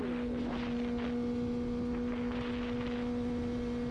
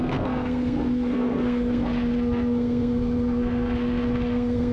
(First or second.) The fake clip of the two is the second